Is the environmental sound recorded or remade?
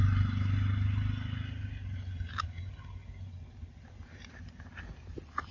recorded